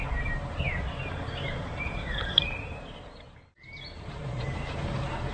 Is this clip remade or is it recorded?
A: remade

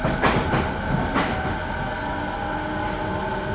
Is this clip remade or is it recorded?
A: recorded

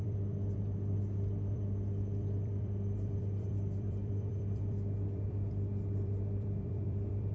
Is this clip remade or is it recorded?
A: remade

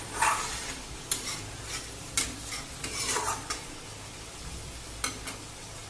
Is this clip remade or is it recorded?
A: recorded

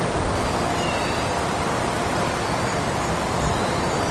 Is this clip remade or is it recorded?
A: recorded